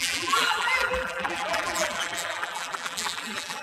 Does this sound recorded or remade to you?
remade